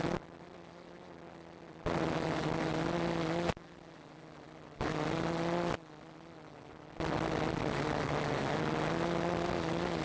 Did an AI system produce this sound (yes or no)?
no